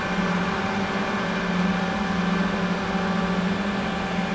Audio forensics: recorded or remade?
recorded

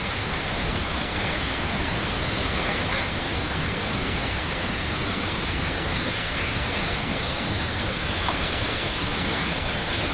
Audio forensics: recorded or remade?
remade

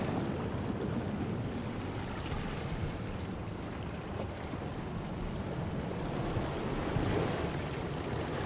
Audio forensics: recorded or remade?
recorded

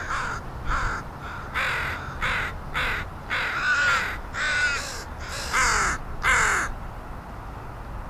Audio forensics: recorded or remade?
recorded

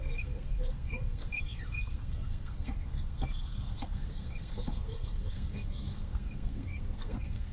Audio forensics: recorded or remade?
remade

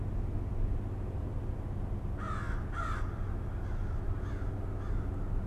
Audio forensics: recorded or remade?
recorded